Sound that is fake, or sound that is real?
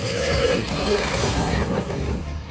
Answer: fake